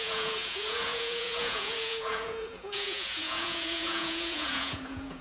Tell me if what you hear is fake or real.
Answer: fake